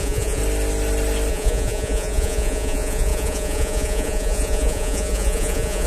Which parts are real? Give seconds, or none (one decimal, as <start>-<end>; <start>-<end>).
0.4-1.3